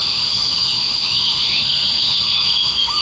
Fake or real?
fake